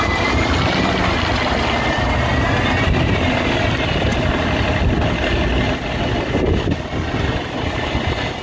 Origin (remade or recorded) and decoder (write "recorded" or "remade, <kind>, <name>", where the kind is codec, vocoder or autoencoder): recorded